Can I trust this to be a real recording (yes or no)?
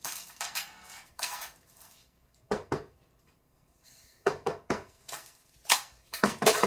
no